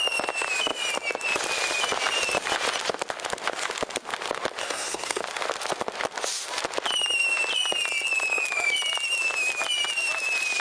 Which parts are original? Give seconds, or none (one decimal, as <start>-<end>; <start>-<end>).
0.0-4.6; 5.2-10.6